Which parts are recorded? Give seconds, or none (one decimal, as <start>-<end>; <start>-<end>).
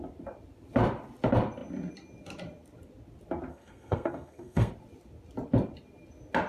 0.0-3.5; 4.7-6.5